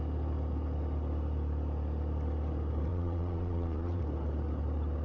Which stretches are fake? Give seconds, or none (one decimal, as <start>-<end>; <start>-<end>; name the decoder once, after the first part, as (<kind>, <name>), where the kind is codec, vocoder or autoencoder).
2.9-4.0 (vocoder, Vocos)